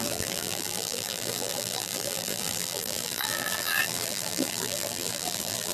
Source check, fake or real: fake